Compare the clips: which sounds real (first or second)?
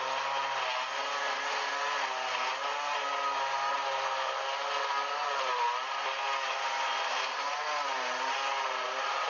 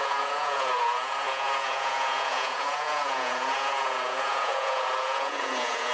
first